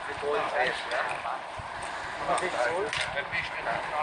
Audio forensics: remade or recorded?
recorded